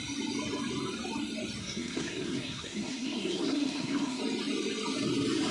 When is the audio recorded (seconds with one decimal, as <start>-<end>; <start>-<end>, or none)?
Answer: 0.0-1.6; 4.2-5.5